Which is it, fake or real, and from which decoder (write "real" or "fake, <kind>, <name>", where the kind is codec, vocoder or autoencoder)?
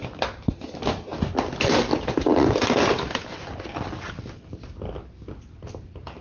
real